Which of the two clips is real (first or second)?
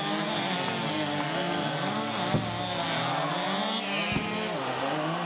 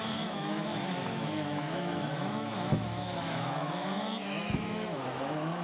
first